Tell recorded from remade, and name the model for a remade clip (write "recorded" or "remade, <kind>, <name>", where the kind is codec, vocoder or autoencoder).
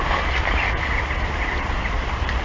recorded